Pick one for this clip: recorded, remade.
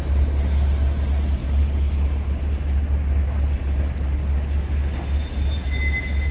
recorded